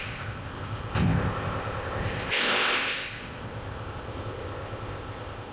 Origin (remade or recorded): remade